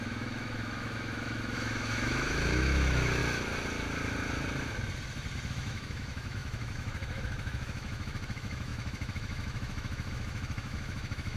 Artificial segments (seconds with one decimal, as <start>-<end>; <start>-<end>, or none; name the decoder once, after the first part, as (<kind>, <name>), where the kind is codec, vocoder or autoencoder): 0.0-3.2 (autoencoder, DAC-VAE); 5.5-11.4